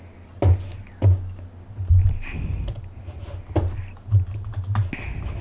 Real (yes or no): yes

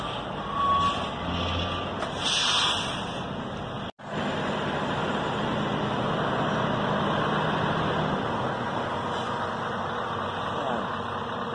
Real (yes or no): yes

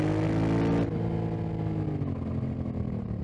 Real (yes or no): yes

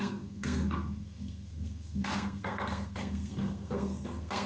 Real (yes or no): no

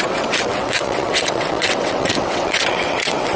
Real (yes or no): no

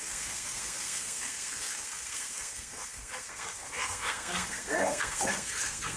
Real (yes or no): no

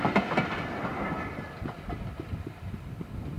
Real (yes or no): yes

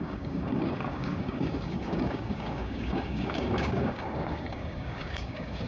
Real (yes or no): no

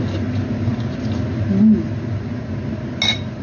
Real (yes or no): yes